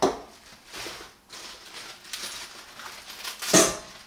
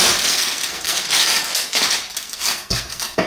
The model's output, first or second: second